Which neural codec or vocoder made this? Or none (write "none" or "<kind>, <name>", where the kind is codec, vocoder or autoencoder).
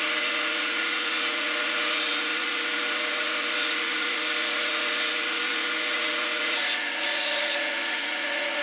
vocoder, Vocos